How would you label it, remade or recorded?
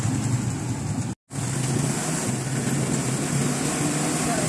recorded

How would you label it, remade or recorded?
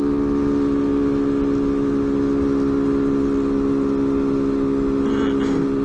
recorded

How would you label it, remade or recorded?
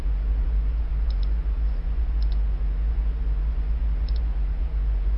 remade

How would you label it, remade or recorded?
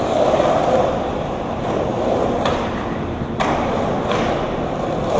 recorded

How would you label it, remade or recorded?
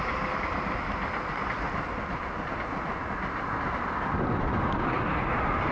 recorded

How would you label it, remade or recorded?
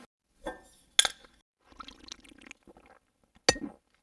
recorded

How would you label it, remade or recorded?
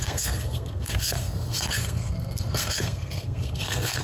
remade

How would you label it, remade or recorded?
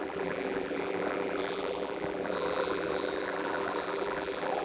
remade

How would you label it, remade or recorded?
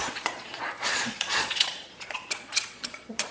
remade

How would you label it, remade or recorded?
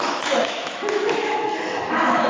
remade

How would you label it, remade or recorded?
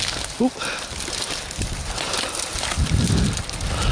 recorded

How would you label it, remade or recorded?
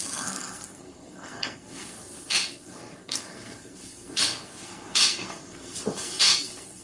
remade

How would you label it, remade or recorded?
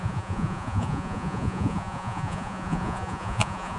remade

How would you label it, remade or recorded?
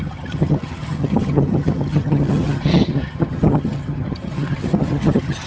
remade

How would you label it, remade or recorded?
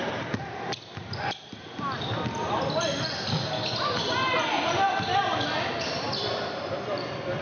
recorded